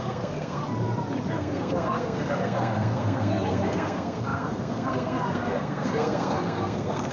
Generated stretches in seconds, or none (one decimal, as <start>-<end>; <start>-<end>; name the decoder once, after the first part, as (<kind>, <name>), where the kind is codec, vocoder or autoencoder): 0.0-0.6 (codec, SNAC); 1.3-7.1